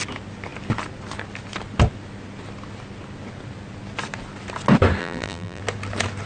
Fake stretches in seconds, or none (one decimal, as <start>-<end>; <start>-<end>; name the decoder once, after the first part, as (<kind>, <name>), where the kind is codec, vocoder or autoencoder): 5.0-5.6 (vocoder, BigVGAN v2)